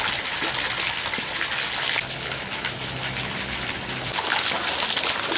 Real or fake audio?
real